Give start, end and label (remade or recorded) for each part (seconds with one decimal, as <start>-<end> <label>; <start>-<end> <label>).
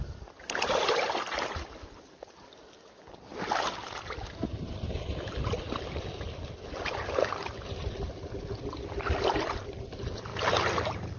0.0-11.2 recorded